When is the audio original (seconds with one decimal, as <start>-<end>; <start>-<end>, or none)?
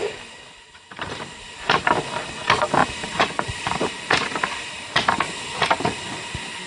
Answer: 0.0-0.9; 1.8-2.8; 3.9-6.7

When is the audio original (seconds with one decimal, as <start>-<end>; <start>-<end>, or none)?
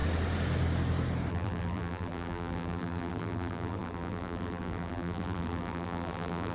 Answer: 0.0-1.3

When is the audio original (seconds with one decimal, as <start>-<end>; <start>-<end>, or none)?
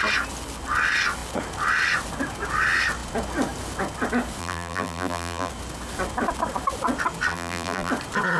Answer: 0.0-4.4; 5.5-7.3; 7.9-8.4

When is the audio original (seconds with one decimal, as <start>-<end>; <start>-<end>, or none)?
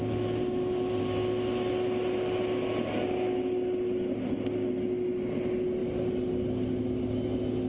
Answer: 0.0-7.7